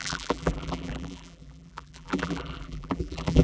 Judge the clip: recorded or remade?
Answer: remade